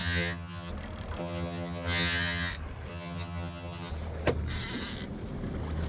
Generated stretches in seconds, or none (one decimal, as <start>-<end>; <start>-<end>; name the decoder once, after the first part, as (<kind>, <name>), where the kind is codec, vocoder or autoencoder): 0.0-0.7 (vocoder, HiFi-GAN); 1.2-2.5; 2.9-3.9